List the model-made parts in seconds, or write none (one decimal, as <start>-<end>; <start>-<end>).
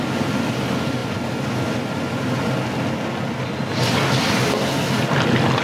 none